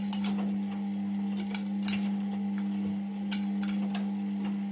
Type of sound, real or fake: real